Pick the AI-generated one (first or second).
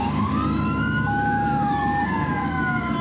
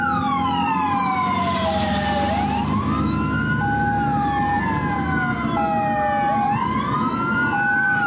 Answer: first